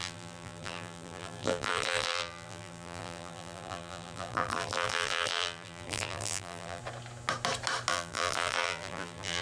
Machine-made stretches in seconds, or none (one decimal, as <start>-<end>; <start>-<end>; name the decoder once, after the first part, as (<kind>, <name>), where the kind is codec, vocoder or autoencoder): 0.0-6.8 (vocoder, BigVGAN v2); 7.9-9.4